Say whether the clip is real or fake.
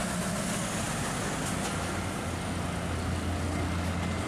real